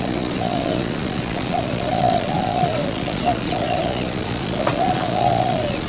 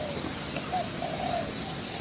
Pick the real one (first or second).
second